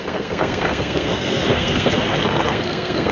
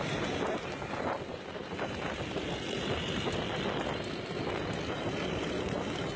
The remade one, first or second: first